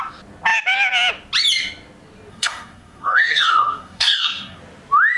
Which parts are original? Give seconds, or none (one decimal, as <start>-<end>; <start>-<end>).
0.0-2.3; 4.6-5.2